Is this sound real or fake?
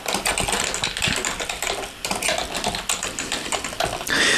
fake